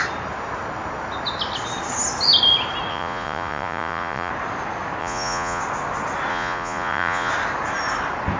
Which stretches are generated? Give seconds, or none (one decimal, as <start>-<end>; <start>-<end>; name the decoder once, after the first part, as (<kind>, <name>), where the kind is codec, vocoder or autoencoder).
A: 2.9-4.3 (vocoder, Vocos); 5.0-5.6; 6.3-7.3

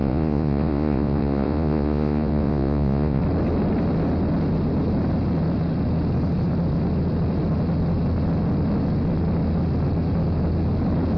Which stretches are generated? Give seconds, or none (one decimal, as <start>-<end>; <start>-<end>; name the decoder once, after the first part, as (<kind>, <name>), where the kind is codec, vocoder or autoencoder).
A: 0.0-3.2 (vocoder, Vocos)